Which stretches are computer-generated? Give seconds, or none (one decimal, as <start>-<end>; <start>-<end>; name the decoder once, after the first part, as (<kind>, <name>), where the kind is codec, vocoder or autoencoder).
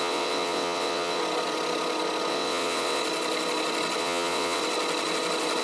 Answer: 0.0-1.2 (vocoder, WaveNeXt); 2.3-3.0; 4.0-4.6